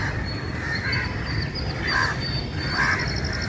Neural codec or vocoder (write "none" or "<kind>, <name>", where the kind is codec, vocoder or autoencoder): none